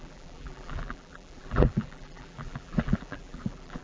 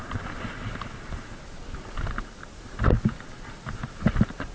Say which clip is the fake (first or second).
first